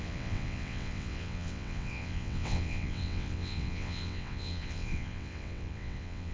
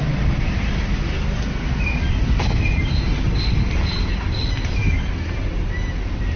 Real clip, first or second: second